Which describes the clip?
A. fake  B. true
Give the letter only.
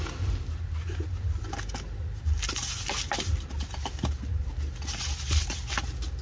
B